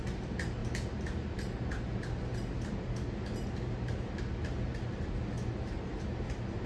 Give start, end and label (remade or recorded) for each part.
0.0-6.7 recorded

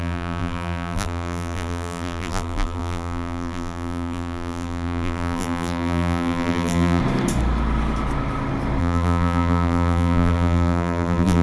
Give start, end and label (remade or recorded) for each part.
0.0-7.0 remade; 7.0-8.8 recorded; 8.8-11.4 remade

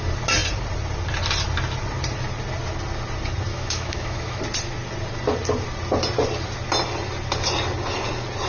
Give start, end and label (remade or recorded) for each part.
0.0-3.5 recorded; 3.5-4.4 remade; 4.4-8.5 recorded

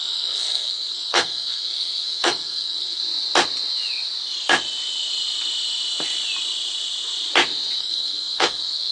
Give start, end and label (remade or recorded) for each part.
0.0-3.0 remade; 3.0-7.8 recorded; 7.8-8.9 remade

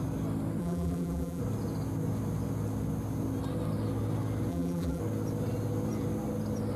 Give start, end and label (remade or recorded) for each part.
0.0-0.6 recorded; 0.6-1.4 remade; 1.4-4.5 recorded; 4.5-5.0 remade; 5.0-6.8 recorded

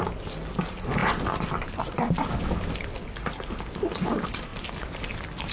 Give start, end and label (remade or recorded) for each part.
0.0-5.5 recorded